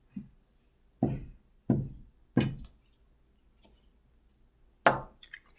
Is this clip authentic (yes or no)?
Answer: yes